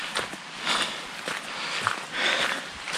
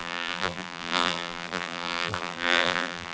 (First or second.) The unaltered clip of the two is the first